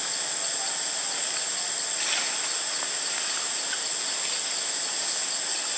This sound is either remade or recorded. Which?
recorded